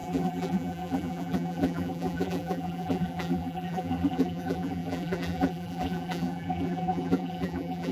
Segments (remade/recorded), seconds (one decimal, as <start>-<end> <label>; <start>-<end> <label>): 0.0-7.9 remade